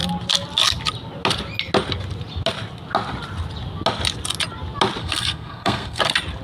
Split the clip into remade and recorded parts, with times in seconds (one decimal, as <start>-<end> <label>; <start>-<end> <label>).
0.0-5.0 recorded; 5.0-6.0 remade; 6.0-6.4 recorded